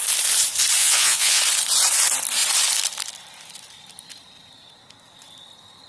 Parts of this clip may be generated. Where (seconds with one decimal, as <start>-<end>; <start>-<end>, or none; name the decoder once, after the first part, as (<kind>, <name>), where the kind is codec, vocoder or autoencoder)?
0.8-1.4 (vocoder, Vocos)